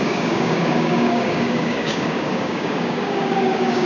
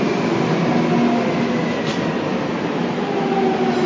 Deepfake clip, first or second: first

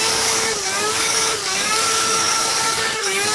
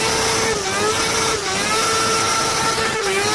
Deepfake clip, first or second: first